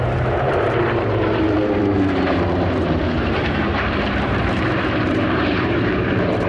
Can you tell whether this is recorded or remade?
remade